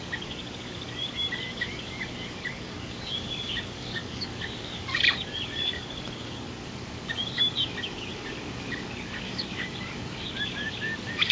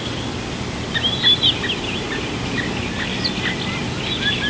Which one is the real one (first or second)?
second